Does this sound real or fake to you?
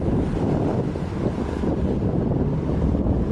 real